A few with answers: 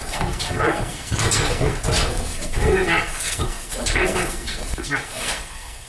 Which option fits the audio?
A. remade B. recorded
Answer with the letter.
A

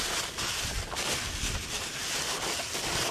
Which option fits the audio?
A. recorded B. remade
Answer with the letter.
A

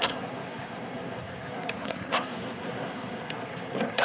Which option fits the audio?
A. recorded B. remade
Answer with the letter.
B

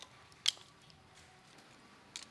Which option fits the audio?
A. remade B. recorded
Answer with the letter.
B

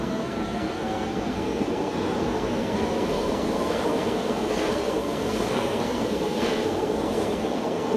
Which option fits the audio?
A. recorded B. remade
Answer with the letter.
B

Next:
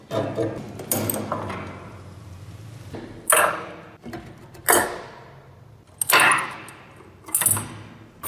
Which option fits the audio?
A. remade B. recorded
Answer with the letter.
B